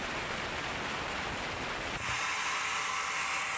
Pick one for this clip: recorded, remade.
recorded